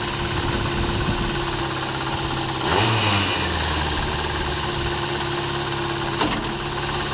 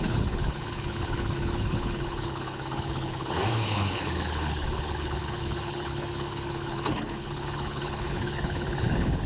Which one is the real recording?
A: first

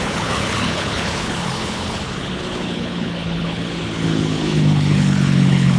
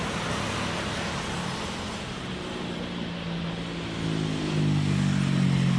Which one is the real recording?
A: second